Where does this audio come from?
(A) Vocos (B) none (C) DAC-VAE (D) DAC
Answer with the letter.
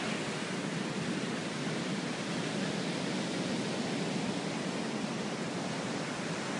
B